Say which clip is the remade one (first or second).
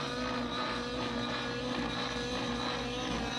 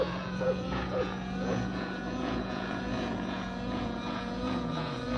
second